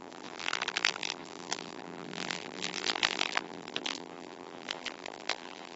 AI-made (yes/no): yes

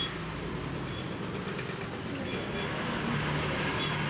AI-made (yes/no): no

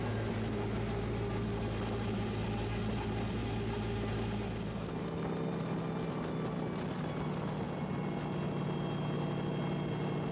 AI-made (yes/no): no